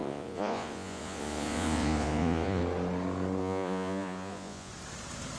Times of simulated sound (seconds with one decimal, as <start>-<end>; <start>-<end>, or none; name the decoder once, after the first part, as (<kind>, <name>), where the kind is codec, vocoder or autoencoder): 0.0-2.6 (vocoder, Vocos); 3.4-4.7